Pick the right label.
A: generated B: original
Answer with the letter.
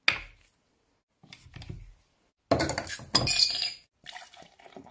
B